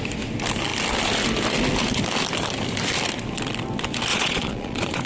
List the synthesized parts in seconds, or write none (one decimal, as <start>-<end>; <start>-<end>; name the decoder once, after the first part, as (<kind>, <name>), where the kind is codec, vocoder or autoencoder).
4.1-5.1 (vocoder, Vocos)